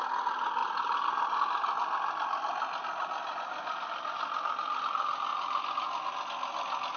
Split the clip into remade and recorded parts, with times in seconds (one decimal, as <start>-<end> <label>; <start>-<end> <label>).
0.0-7.0 recorded